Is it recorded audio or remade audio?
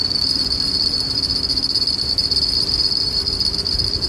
recorded